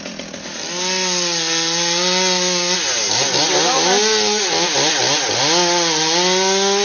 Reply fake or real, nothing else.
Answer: real